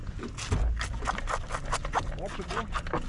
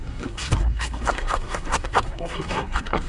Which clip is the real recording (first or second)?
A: first